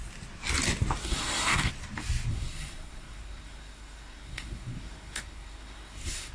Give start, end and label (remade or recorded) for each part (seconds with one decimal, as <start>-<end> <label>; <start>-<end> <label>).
0.0-1.0 recorded; 1.0-1.7 remade; 1.7-2.3 recorded; 2.3-6.3 remade